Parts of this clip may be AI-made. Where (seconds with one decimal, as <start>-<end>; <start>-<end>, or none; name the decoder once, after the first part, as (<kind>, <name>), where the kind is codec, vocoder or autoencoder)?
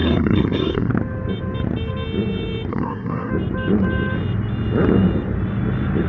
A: 0.0-0.9 (codec, SNAC); 2.7-3.3